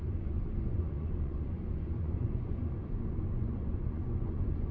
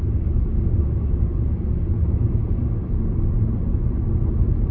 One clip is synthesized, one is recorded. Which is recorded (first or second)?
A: second